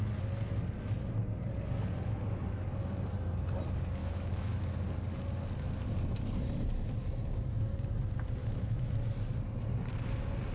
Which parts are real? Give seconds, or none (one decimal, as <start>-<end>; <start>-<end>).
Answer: 0.0-4.0; 4.6-8.4; 8.9-10.5